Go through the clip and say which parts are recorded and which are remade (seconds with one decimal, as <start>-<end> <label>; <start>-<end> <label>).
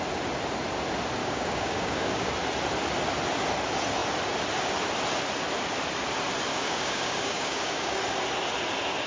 0.0-1.2 recorded; 1.2-2.3 remade; 2.3-6.5 recorded; 6.5-8.0 remade; 8.0-9.1 recorded